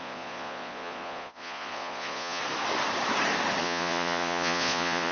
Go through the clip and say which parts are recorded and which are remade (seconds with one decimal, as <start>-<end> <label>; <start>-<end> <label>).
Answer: 0.0-2.4 remade; 2.4-3.6 recorded; 3.6-5.1 remade